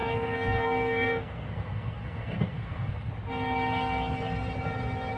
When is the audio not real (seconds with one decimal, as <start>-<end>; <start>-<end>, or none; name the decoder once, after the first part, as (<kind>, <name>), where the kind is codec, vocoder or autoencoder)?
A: 0.0-3.1 (codec, SNAC)

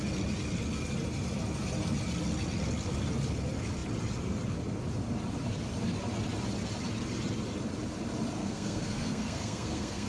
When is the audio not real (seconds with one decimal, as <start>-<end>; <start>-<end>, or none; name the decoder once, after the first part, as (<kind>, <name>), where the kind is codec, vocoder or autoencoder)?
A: 8.4-10.1 (codec, SNAC)

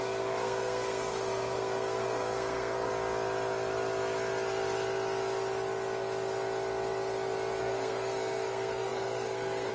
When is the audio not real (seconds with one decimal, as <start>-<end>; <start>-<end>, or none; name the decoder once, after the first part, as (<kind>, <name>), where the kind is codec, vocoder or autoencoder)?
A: 0.0-2.9 (codec, SNAC); 7.6-9.7

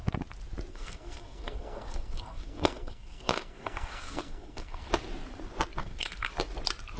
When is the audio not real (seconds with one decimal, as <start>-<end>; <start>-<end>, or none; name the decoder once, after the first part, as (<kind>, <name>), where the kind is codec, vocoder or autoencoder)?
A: 0.7-4.9 (codec, SNAC); 5.8-6.3

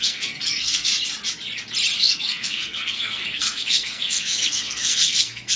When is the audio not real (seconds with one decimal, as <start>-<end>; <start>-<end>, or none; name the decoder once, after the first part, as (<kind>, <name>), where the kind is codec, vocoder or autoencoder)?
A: 0.0-0.9 (codec, SNAC); 2.0-5.6